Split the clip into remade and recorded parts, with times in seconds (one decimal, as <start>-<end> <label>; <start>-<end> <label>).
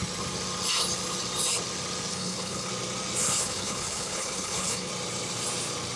0.0-2.1 recorded; 2.1-2.7 remade; 2.7-3.2 recorded; 3.2-4.9 remade; 4.9-6.0 recorded